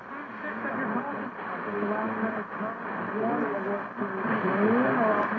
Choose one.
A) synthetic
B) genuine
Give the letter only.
B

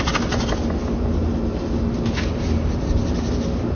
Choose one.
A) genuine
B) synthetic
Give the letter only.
A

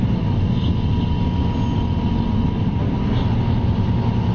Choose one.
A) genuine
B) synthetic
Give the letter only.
A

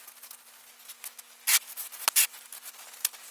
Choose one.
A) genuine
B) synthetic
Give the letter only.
A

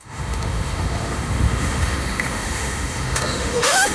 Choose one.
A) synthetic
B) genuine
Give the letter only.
A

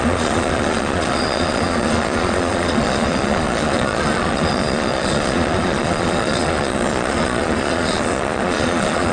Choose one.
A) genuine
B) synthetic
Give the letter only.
B